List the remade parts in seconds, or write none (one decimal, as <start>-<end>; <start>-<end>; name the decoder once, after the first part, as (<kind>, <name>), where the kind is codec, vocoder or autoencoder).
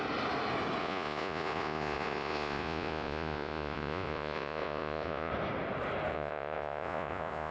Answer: 0.8-5.3 (vocoder, Vocos); 6.1-7.5